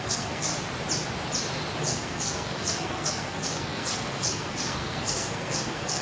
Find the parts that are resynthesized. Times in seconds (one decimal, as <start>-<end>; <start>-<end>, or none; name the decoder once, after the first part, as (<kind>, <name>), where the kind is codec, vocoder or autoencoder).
0.0-0.5 (codec, SNAC); 1.8-6.0